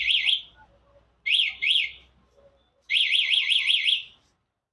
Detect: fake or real real